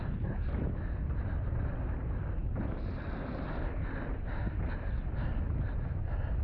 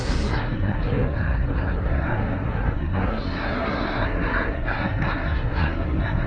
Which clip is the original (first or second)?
first